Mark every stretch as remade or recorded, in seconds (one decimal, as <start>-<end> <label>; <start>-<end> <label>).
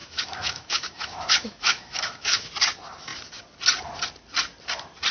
0.0-2.5 remade; 2.5-5.1 recorded